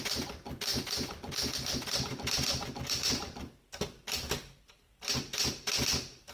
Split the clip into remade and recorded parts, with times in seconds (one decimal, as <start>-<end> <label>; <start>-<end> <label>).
0.0-6.3 recorded